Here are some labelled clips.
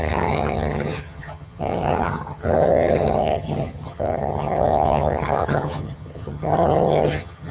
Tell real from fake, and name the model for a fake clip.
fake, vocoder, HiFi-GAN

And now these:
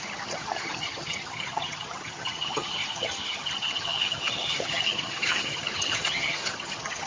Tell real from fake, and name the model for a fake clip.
fake, vocoder, HiFi-GAN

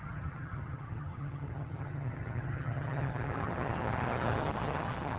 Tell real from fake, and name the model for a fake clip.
fake, vocoder, HiFi-GAN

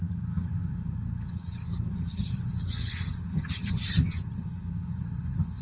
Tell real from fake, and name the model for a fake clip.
fake, vocoder, HiFi-GAN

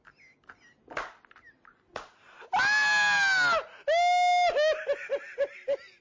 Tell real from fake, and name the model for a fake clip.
real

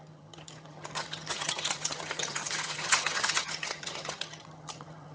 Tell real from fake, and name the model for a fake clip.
fake, vocoder, HiFi-GAN